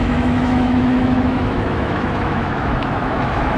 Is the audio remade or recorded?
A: remade